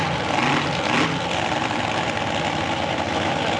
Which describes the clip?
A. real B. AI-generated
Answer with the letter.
A